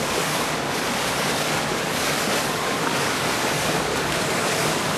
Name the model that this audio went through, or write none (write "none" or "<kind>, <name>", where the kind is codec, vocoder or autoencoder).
codec, DAC